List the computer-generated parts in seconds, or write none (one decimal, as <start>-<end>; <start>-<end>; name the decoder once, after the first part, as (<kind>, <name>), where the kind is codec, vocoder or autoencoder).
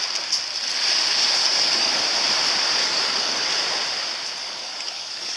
1.4-2.0 (codec, DAC); 2.8-3.5; 4.4-5.4